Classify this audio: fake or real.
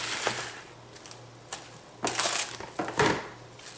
real